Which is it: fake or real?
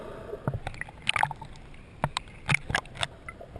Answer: real